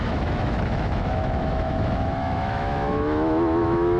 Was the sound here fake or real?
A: fake